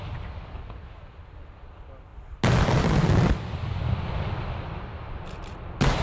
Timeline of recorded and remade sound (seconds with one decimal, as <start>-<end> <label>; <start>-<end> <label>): 0.0-6.0 recorded